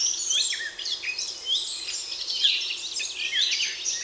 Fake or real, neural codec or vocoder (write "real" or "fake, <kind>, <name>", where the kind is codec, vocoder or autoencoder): real